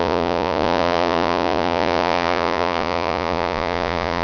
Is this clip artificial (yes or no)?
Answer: yes